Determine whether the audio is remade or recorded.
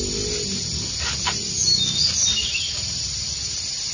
recorded